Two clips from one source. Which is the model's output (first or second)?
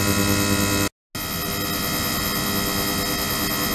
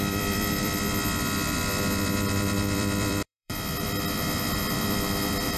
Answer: second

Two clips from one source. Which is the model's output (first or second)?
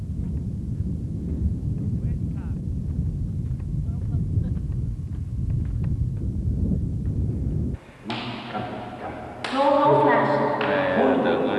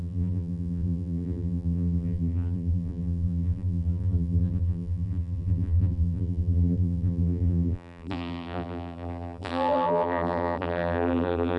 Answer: second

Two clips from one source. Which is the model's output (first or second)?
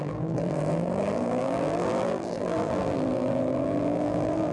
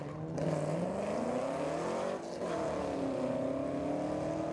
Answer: first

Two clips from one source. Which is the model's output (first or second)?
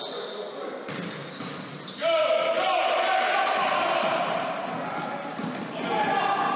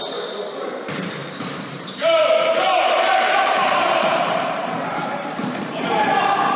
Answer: second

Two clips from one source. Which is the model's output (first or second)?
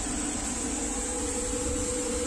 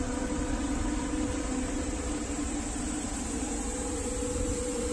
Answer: second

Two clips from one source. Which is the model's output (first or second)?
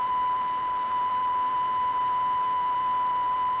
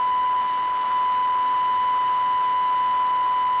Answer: first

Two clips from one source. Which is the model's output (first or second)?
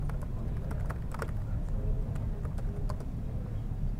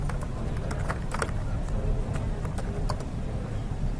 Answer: second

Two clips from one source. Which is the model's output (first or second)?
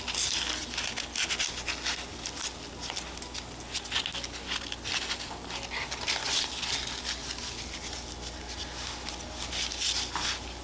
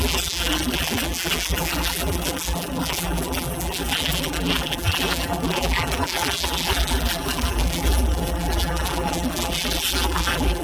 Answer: second